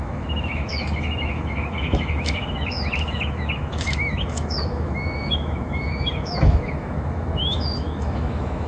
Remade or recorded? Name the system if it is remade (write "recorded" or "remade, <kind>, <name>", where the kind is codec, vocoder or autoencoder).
remade, autoencoder, DAC-VAE